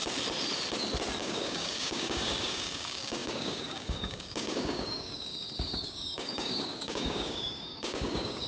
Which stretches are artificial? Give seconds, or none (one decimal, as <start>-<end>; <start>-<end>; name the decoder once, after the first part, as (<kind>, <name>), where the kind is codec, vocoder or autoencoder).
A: 1.2-8.5 (codec, DAC)